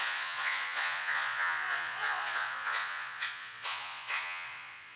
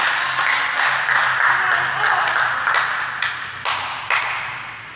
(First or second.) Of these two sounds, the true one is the second